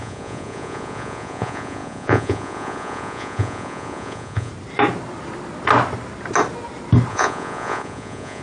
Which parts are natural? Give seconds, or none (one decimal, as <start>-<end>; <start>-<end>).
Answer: 4.5-7.1